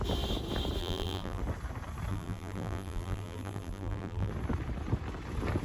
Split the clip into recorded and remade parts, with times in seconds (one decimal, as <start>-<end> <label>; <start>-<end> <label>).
0.0-0.8 recorded; 0.8-1.4 remade; 1.4-2.1 recorded; 2.1-4.3 remade; 4.3-5.6 recorded